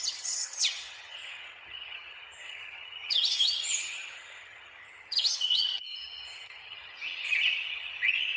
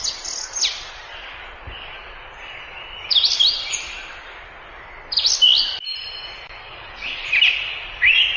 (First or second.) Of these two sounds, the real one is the second